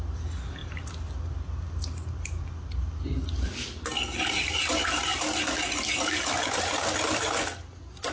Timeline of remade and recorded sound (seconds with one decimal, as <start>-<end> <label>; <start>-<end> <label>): 0.0-8.1 recorded